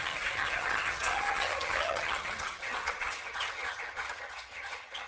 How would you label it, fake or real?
fake